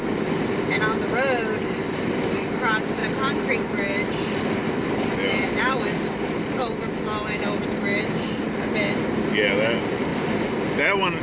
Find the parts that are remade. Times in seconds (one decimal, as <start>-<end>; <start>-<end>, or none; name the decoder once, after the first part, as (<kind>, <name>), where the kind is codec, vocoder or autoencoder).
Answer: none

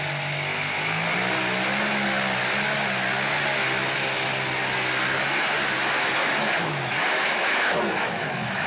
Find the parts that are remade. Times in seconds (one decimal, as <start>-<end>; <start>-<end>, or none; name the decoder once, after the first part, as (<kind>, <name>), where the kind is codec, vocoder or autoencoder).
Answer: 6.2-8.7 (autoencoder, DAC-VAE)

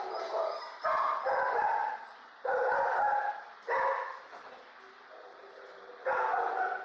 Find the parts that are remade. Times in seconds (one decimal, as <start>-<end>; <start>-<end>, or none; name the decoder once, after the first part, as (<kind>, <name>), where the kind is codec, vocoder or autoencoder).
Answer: none

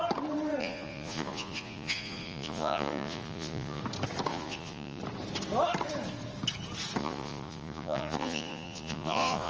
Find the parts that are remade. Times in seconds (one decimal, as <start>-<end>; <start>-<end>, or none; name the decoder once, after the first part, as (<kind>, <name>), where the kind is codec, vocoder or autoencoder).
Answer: 0.6-3.8 (vocoder, Vocos); 4.3-5.0; 7.0-9.5

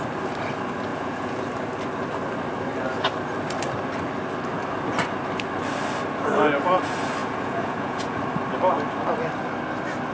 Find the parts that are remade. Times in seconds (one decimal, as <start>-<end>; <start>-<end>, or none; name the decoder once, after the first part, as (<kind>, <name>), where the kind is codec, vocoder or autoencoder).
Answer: 0.9-1.4 (vocoder, Vocos); 7.2-8.2

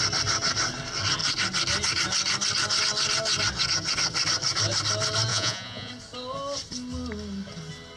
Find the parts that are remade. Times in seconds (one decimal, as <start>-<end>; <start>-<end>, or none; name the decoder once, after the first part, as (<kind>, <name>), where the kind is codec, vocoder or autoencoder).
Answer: 5.3-5.9 (vocoder, Vocos)